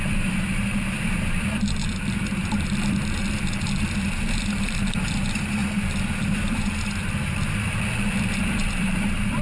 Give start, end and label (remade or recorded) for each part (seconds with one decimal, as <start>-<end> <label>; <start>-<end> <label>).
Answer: 0.0-3.0 remade; 3.0-3.9 recorded; 3.9-9.4 remade